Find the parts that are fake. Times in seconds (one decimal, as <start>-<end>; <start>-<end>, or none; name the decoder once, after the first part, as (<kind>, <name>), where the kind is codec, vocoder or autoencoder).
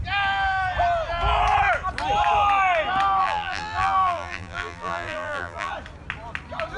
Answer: 3.2-5.7 (vocoder, BigVGAN v2)